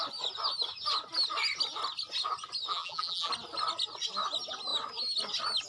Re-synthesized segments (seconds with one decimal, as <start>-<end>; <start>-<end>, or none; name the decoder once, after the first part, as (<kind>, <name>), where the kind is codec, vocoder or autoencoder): 2.7-3.3 (vocoder, BigVGAN v2)